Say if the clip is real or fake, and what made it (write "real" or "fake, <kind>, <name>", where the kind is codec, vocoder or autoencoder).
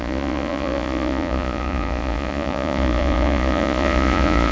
fake, vocoder, Vocos